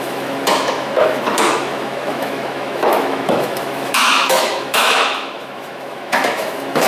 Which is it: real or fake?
fake